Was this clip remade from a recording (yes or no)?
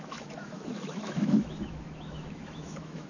yes